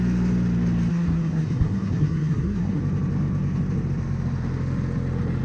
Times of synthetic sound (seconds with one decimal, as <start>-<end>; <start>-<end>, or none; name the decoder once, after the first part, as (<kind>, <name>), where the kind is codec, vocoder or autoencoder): 0.9-2.8 (codec, SNAC)